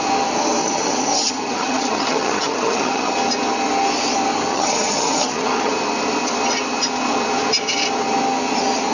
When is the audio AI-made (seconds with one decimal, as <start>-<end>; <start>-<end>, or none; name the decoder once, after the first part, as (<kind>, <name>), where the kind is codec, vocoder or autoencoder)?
0.6-3.1 (vocoder, HiFi-GAN); 4.5-5.7